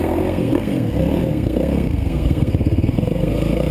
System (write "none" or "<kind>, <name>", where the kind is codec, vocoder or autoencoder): codec, SNAC